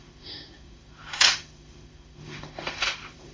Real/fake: fake